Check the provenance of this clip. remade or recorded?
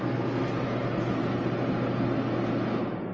recorded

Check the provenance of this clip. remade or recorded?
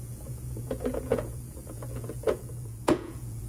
remade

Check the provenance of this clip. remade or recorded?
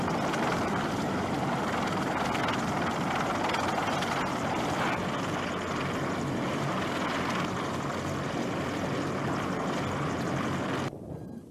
recorded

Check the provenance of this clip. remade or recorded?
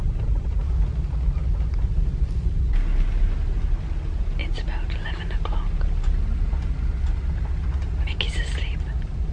recorded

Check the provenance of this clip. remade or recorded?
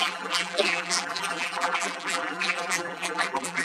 remade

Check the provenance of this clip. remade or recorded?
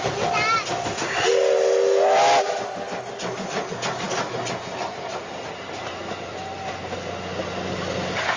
recorded